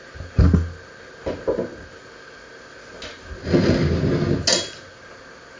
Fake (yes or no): no